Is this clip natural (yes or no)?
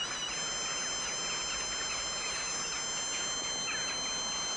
yes